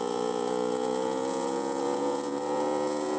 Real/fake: fake